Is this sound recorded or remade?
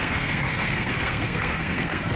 remade